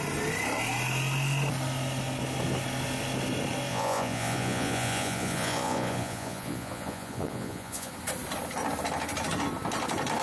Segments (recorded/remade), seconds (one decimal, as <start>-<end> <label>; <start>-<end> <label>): 0.0-3.7 recorded; 3.7-7.9 remade; 7.9-10.2 recorded

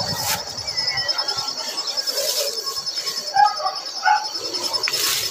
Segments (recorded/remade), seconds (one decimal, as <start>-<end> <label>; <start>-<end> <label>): 0.0-5.3 recorded

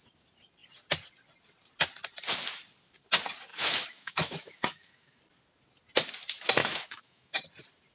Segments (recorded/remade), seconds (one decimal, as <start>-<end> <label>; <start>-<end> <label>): 0.0-3.5 recorded; 3.5-5.2 remade; 5.2-6.6 recorded; 6.6-7.4 remade; 7.4-7.9 recorded

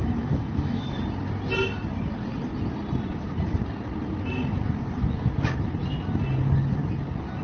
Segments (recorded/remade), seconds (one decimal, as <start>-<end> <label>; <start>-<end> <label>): 0.0-1.0 remade; 1.0-7.4 recorded

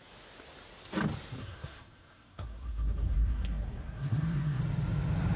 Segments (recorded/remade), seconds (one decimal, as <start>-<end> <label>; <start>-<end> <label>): 0.0-1.4 recorded; 1.4-4.6 remade; 4.6-5.4 recorded

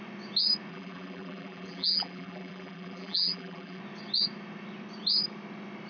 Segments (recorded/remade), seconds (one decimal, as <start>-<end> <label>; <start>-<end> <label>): 0.0-0.7 recorded; 0.7-3.8 remade; 3.8-5.9 recorded

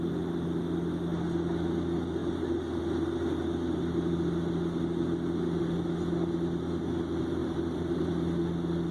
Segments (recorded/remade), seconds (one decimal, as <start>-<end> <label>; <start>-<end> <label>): 0.0-7.4 recorded; 7.4-8.1 remade; 8.1-8.9 recorded